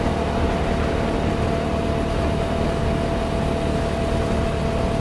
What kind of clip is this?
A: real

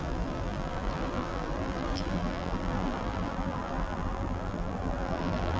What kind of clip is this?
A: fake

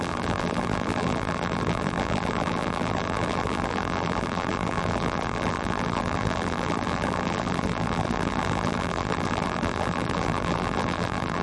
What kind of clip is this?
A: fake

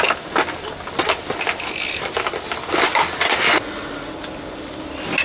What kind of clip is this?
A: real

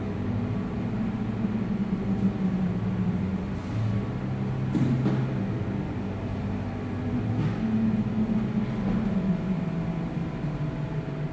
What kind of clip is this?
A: real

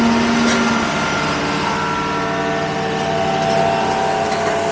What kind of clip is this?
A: real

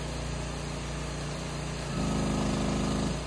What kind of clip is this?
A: real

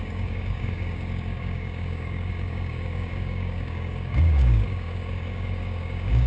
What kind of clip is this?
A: fake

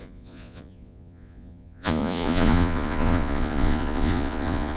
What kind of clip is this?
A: fake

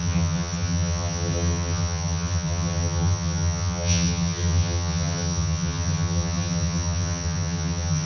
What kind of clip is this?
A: fake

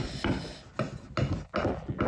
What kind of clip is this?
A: real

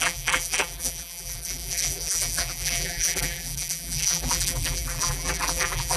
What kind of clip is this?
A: fake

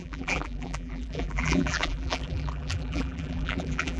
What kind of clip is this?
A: fake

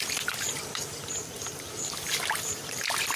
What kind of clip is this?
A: real